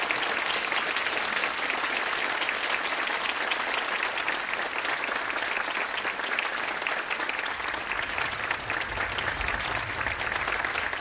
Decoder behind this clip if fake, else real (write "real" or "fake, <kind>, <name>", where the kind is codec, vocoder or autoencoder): real